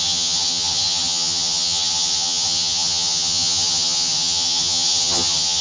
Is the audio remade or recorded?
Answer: remade